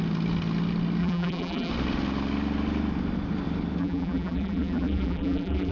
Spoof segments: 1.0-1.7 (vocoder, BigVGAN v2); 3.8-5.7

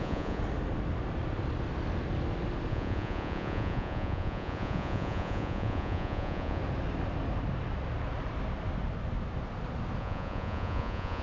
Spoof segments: 0.0-0.4 (vocoder, Vocos); 2.7-6.6; 10.0-11.2

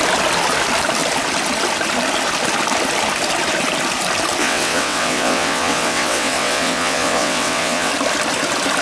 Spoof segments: 4.4-7.9 (vocoder, WaveNeXt)

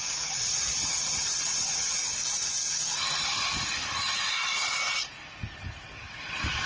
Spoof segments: 0.0-2.0 (vocoder, WaveNeXt); 6.0-6.7

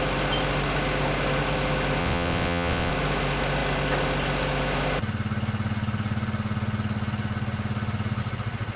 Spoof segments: 2.0-2.9 (vocoder, WaveNeXt)

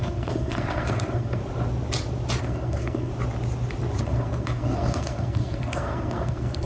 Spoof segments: 0.0-1.4 (codec, SNAC); 2.4-3.1; 4.0-6.7

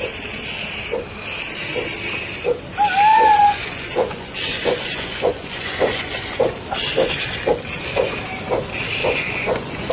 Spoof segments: 3.1-6.4 (vocoder, Vocos); 9.0-9.9